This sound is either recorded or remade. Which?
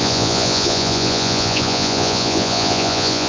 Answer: remade